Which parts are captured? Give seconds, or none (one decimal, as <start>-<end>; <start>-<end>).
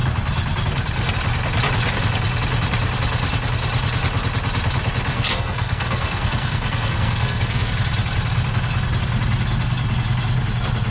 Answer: 0.0-5.1; 7.7-10.9